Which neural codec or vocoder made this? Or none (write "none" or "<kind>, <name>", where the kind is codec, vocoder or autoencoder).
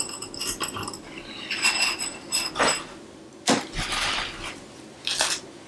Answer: none